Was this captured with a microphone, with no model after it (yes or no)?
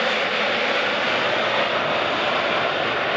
yes